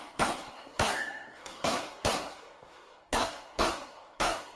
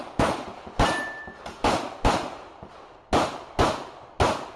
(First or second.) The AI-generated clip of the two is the first